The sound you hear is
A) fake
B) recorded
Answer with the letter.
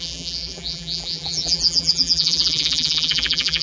A